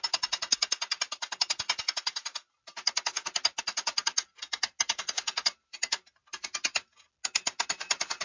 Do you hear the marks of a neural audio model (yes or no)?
no